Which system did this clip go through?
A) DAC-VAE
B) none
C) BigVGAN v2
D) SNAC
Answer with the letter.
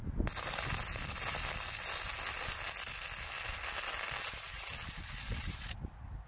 B